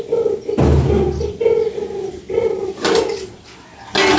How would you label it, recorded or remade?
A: recorded